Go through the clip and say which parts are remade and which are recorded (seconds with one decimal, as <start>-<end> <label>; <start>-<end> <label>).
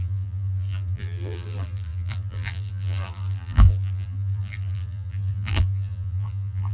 0.0-6.7 remade